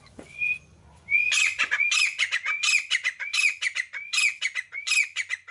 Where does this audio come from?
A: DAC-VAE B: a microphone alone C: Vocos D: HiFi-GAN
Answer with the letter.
C